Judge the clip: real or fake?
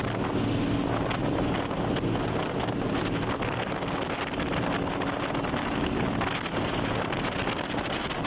real